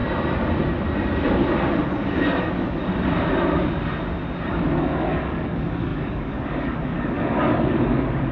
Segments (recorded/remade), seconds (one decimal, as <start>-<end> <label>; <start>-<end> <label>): 0.0-2.4 recorded; 2.4-2.8 remade; 2.8-4.5 recorded; 4.5-8.3 remade